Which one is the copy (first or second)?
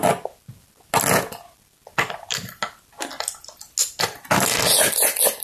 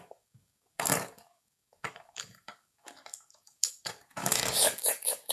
second